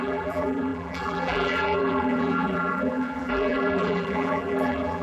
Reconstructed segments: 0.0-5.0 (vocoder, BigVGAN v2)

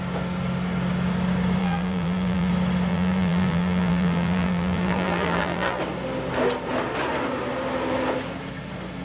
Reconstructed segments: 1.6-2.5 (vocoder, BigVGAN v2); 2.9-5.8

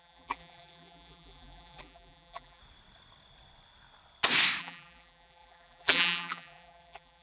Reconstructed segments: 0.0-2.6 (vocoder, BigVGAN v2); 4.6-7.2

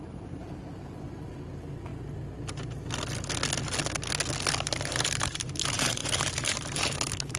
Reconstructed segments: 0.0-1.9 (vocoder, BigVGAN v2); 4.8-7.4

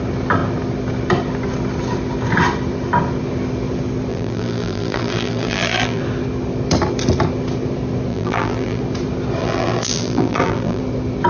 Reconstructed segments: 4.1-6.0 (vocoder, BigVGAN v2); 8.1-8.8; 9.4-10.8

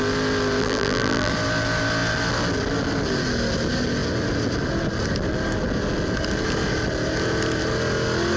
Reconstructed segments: 0.6-1.3 (vocoder, BigVGAN v2)

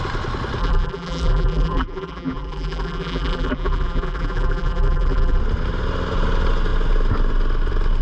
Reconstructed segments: 0.6-5.4 (vocoder, BigVGAN v2)

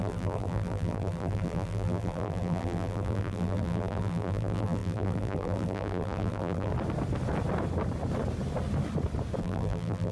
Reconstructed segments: 0.0-6.7 (vocoder, BigVGAN v2); 9.4-10.1